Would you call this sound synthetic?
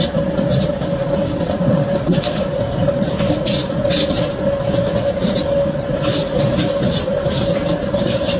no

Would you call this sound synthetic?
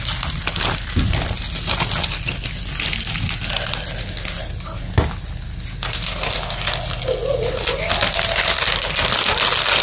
no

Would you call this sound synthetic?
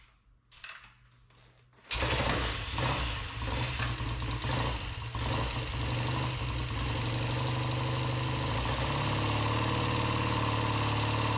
no